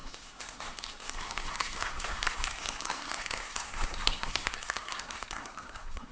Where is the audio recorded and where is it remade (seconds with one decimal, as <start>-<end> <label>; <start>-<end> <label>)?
0.0-6.1 remade